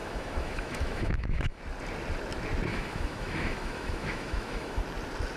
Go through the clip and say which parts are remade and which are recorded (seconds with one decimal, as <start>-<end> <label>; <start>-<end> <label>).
0.0-1.6 remade; 1.6-2.7 recorded; 2.7-4.8 remade; 4.8-5.4 recorded